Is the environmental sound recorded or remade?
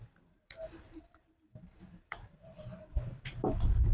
remade